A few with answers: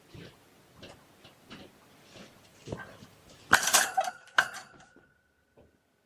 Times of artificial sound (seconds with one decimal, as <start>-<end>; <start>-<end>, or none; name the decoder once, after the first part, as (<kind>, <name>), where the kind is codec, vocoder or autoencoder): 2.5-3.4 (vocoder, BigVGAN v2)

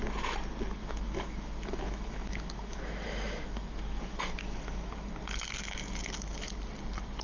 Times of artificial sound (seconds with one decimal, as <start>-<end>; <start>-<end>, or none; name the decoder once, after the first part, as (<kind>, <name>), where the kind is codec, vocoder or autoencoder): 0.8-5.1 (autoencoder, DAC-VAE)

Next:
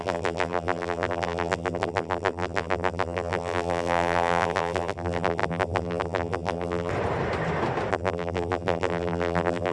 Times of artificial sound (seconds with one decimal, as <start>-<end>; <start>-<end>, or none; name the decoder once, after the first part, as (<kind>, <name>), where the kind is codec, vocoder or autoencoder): 0.0-6.9 (vocoder, BigVGAN v2); 7.9-9.7